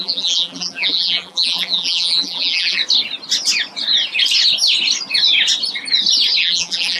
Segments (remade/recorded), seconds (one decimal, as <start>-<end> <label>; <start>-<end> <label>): 0.0-2.8 remade; 2.8-6.4 recorded; 6.4-7.0 remade